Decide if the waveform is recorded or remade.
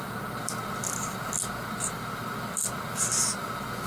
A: recorded